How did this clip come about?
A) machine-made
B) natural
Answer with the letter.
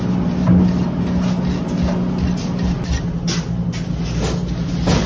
B